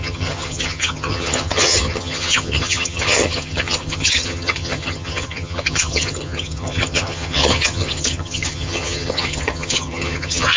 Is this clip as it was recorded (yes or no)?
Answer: no